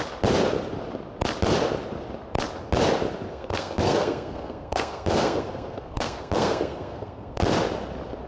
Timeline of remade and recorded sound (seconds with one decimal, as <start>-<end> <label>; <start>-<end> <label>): 0.0-3.3 recorded; 3.3-7.4 remade; 7.4-8.3 recorded